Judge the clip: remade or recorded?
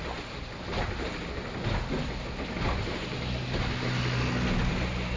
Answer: recorded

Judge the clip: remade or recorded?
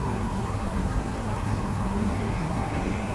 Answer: remade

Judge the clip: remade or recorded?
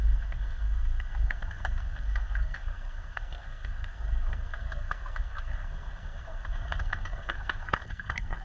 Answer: remade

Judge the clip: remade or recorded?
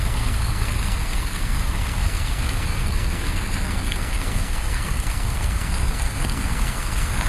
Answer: remade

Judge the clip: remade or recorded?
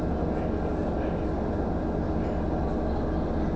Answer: recorded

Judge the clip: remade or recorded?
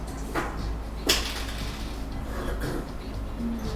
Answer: recorded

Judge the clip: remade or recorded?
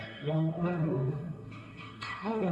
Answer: remade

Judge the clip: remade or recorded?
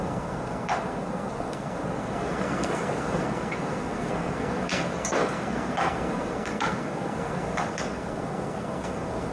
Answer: remade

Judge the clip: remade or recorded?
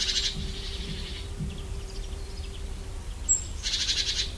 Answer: recorded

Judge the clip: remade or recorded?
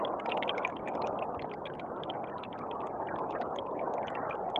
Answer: recorded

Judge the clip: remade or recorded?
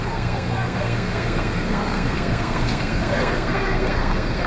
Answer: remade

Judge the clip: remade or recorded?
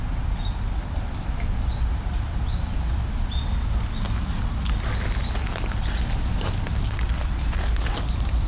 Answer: recorded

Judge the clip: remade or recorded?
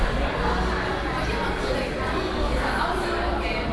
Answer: recorded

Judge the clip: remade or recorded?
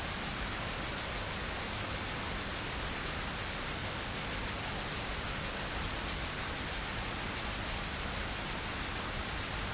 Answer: recorded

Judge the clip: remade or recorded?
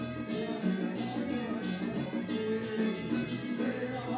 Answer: recorded